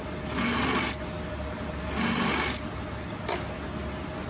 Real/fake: real